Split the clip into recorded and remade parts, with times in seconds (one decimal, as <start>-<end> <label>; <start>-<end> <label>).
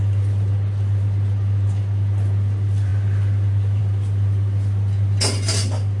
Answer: 0.0-6.0 recorded